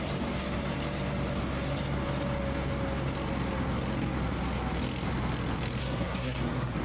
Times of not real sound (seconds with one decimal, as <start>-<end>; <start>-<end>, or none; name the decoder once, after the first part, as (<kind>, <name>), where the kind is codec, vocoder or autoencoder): 5.8-6.8 (codec, SNAC)